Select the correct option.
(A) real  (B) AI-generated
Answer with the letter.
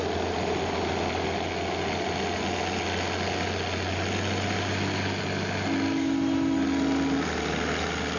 A